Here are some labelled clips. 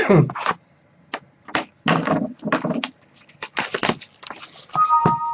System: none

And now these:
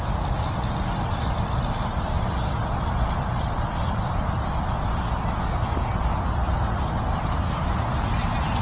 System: none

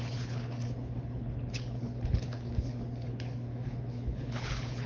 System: codec, HILCodec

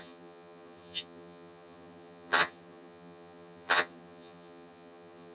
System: vocoder, HiFi-GAN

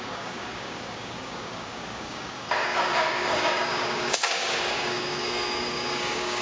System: codec, DAC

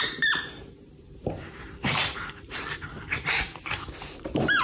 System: vocoder, BigVGAN v2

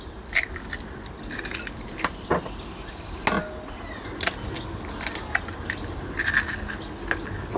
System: none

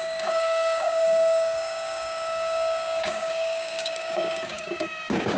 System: codec, DAC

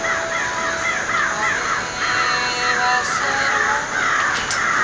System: none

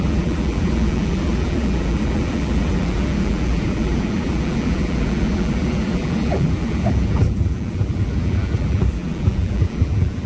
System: vocoder, BigVGAN v2